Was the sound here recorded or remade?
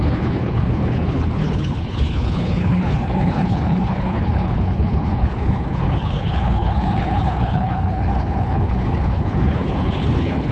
remade